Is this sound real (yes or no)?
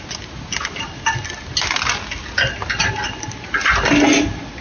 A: yes